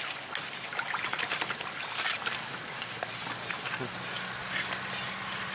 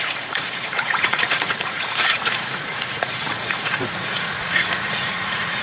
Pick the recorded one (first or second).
first